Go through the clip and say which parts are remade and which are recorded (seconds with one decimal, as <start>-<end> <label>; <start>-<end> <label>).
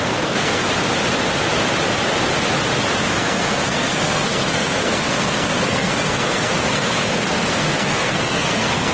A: 0.0-0.6 remade; 0.6-3.1 recorded; 3.1-8.9 remade